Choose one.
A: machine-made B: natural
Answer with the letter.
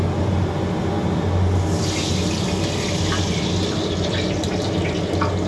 B